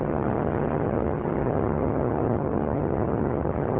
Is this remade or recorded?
remade